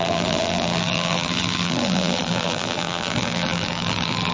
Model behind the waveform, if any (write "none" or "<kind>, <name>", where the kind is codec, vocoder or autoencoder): vocoder, BigVGAN v2